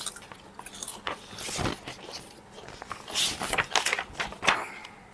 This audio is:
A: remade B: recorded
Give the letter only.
B